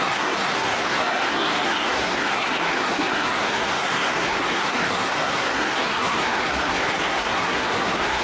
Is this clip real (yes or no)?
no